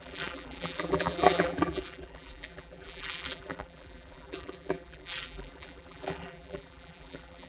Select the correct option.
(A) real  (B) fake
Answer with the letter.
B